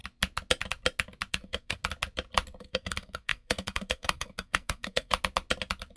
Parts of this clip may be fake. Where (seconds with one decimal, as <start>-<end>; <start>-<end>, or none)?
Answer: 1.3-1.8; 2.6-5.1